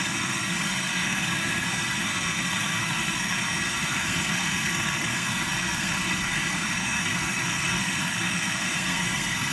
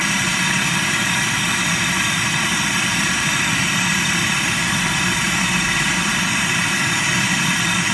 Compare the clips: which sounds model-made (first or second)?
first